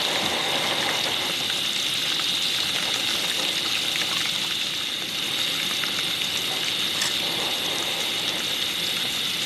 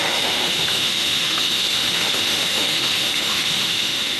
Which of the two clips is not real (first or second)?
second